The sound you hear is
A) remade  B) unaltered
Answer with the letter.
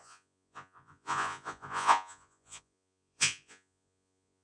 A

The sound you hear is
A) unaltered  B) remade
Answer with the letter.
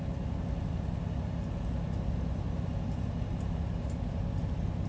A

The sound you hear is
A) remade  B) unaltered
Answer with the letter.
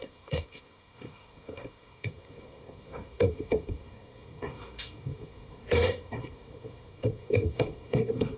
A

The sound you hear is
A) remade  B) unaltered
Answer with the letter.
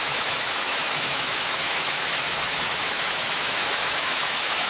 A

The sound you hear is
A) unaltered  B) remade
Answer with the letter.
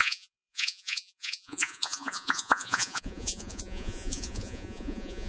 B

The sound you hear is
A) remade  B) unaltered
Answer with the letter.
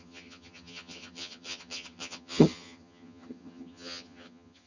A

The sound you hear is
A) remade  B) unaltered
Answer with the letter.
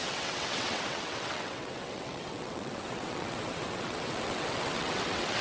A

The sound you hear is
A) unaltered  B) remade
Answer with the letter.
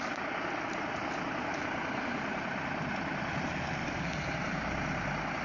A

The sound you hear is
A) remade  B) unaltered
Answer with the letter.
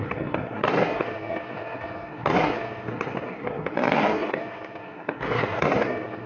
A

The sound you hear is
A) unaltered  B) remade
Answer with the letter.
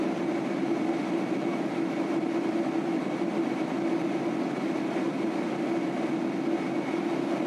A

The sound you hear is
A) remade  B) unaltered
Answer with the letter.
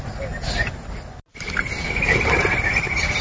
B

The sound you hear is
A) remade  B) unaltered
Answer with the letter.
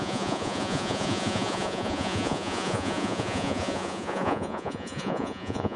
A